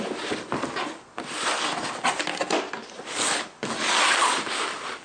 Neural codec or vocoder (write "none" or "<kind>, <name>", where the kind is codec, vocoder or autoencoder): none